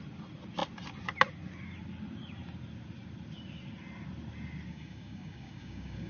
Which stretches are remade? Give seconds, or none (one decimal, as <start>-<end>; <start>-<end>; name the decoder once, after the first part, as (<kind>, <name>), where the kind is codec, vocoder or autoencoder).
4.7-6.1 (codec, DAC)